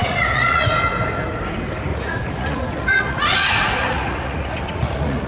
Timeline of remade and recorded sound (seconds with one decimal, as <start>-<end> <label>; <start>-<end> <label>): 0.0-0.7 remade; 0.7-1.9 recorded; 1.9-5.3 remade